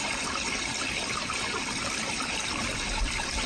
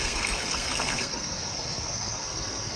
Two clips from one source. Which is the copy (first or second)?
second